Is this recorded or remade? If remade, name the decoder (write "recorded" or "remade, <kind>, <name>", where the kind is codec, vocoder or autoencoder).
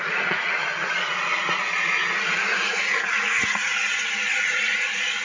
remade, vocoder, Vocos